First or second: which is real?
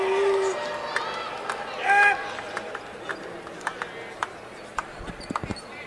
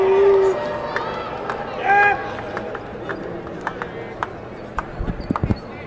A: second